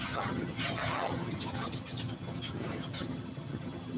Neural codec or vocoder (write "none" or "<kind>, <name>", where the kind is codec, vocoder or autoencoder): vocoder, HiFi-GAN